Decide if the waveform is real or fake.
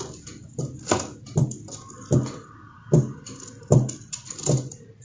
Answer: real